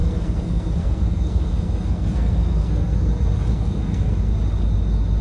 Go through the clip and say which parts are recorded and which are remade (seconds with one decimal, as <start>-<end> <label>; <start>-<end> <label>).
0.0-3.1 remade; 3.1-3.5 recorded; 3.5-4.3 remade; 4.3-5.2 recorded